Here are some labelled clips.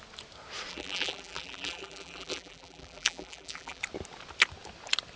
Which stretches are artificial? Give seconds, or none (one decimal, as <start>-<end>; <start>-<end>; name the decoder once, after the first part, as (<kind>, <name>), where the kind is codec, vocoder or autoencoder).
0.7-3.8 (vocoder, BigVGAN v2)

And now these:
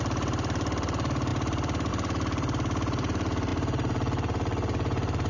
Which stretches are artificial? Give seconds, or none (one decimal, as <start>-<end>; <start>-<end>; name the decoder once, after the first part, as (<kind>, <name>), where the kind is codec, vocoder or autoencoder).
0.0-5.3 (vocoder, BigVGAN v2)

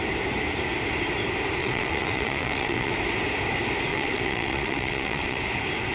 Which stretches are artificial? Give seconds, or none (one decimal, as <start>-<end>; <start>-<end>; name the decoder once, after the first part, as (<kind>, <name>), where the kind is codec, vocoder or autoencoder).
1.6-2.9 (vocoder, WaveNeXt); 3.9-5.4

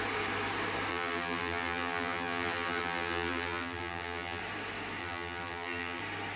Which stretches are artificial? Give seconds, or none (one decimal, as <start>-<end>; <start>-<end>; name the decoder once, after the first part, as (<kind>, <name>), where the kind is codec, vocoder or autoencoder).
0.9-4.4 (vocoder, BigVGAN v2); 5.0-6.0